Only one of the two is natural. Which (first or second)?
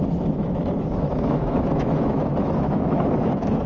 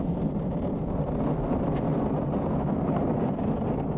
second